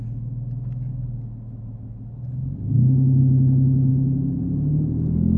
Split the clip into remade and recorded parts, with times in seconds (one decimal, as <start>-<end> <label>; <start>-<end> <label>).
0.0-5.4 recorded